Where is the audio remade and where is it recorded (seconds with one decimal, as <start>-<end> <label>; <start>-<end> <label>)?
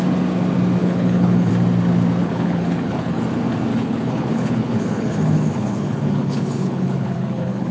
0.0-0.8 recorded; 0.8-1.5 remade; 1.5-2.2 recorded; 2.2-3.2 remade; 3.2-3.7 recorded; 3.7-7.7 remade